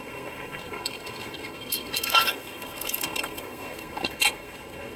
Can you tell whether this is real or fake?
fake